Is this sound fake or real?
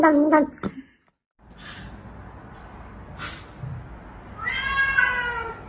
real